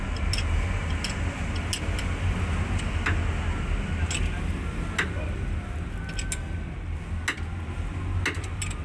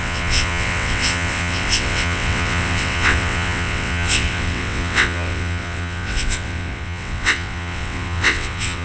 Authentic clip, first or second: first